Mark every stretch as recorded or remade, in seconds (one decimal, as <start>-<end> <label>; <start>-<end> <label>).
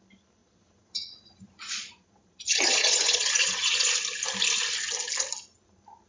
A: 0.0-0.4 recorded; 0.4-3.9 remade; 3.9-6.1 recorded